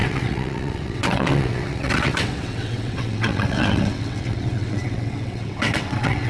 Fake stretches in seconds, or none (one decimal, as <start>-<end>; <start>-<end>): 0.0-6.3